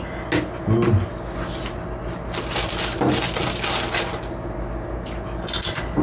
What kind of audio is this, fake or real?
real